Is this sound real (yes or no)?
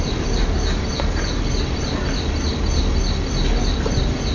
yes